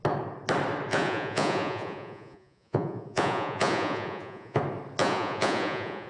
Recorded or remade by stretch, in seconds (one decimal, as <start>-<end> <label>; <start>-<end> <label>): 0.0-0.9 recorded; 0.9-4.6 remade; 4.6-5.0 recorded; 5.0-6.1 remade